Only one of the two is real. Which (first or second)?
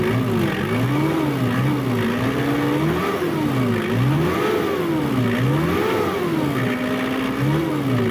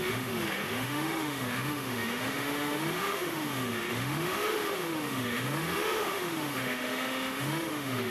first